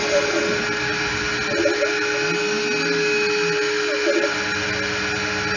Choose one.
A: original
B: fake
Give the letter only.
A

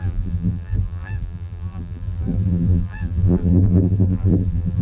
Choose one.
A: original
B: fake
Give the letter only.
B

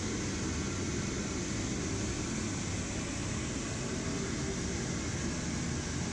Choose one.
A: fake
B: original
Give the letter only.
B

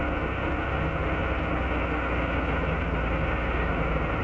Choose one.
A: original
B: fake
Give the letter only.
A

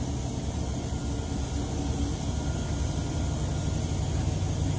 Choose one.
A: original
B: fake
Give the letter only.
A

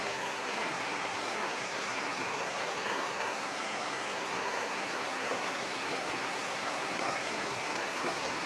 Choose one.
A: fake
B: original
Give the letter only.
A